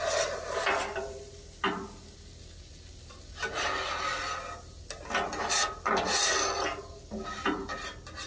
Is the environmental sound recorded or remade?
recorded